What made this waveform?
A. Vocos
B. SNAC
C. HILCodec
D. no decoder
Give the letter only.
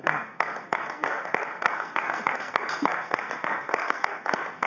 B